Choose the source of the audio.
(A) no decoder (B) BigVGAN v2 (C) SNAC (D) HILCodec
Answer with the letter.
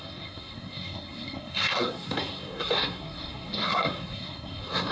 C